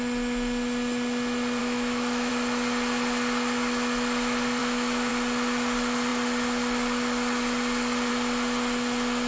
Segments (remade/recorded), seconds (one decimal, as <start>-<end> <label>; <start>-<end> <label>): 0.0-1.6 recorded; 1.6-2.3 remade; 2.3-4.6 recorded; 4.6-5.1 remade; 5.1-9.3 recorded